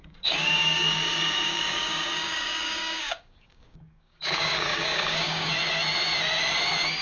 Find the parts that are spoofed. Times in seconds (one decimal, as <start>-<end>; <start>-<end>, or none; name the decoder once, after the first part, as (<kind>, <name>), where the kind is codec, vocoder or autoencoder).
0.0-5.5 (codec, DAC)